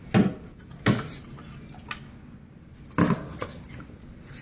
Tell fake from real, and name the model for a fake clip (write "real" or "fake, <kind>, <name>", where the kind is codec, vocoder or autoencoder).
real